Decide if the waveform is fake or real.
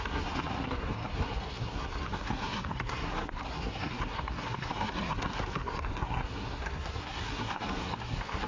fake